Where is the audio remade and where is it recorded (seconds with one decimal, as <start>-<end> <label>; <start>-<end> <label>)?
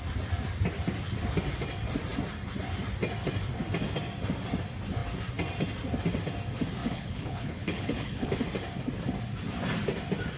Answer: 0.0-6.8 recorded; 6.8-8.3 remade; 8.3-10.4 recorded